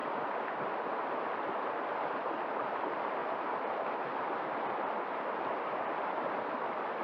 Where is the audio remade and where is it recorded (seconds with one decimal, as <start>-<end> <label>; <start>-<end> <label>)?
0.0-3.2 recorded; 3.2-4.1 remade; 4.1-5.1 recorded; 5.1-6.0 remade; 6.0-7.0 recorded